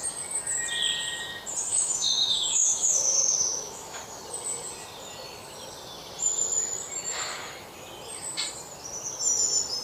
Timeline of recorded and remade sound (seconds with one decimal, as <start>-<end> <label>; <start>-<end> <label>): 0.0-1.7 recorded; 1.7-4.0 remade; 4.0-9.8 recorded